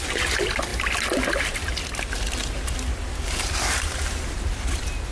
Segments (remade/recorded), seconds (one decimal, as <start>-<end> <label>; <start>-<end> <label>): 0.0-5.1 recorded